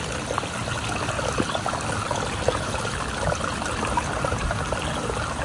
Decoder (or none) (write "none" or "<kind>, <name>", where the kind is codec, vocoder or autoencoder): none